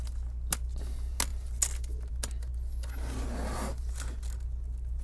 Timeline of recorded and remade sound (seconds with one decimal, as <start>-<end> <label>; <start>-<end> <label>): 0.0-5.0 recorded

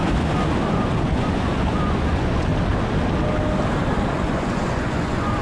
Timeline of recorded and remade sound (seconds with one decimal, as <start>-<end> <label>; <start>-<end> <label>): 0.0-0.7 recorded; 0.7-2.5 remade; 2.5-4.2 recorded; 4.2-5.4 remade

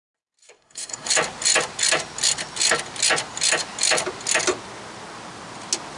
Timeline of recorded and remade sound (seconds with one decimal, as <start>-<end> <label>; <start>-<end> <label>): 0.0-0.4 recorded; 0.4-1.1 remade; 1.1-6.0 recorded

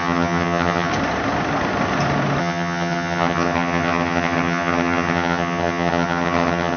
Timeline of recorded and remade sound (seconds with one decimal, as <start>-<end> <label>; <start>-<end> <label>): 0.0-0.9 remade; 0.9-2.4 recorded; 2.4-6.8 remade

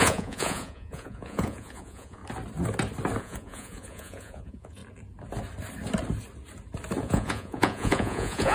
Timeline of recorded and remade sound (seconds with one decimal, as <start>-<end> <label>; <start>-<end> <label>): 0.0-2.2 remade; 2.2-3.2 recorded; 3.2-4.8 remade; 4.8-7.0 recorded; 7.0-8.5 remade

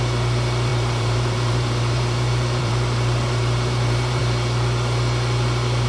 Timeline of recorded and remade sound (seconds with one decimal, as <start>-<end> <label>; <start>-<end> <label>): 0.0-0.7 recorded; 0.7-4.2 remade; 4.2-5.9 recorded

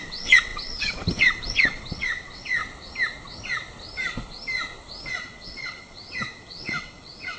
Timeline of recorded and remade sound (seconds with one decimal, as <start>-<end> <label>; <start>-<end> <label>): 0.0-2.6 remade; 2.6-5.1 recorded; 5.1-7.4 remade